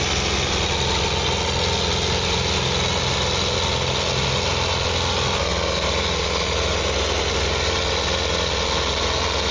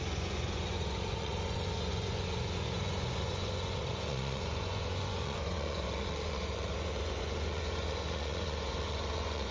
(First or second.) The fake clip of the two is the second